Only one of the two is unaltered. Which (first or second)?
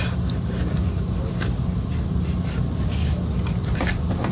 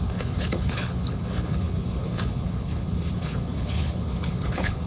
first